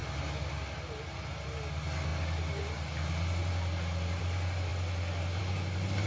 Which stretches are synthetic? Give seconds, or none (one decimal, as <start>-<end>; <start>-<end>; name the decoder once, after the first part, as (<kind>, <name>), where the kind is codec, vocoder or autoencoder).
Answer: none